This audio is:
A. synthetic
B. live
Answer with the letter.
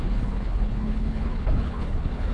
A